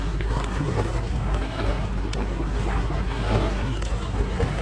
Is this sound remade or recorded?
remade